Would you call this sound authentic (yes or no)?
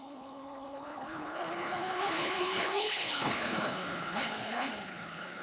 no